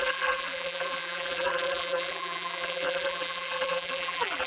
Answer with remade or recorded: remade